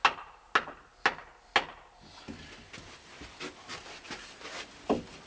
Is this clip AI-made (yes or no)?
no